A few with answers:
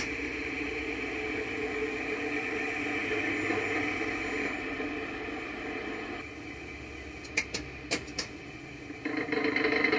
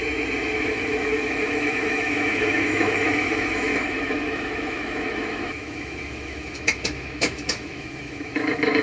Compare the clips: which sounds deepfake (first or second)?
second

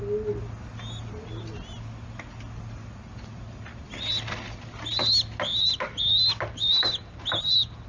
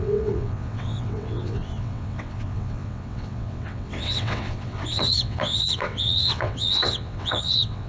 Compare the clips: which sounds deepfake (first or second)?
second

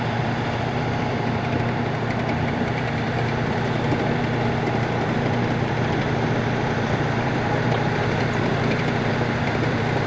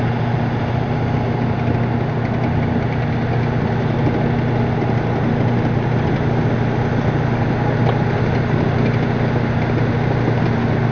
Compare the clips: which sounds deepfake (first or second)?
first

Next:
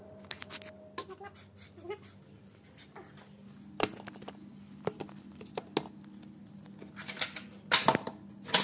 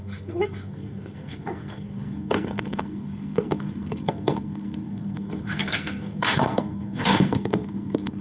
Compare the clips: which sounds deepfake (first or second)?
second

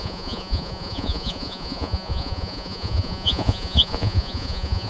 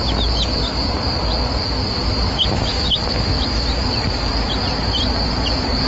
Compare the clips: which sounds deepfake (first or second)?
first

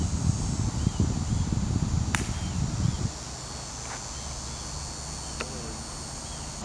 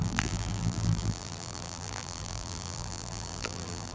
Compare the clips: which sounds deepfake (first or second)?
second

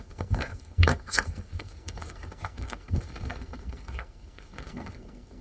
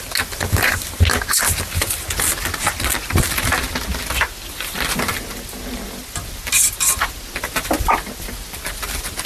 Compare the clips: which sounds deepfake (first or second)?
first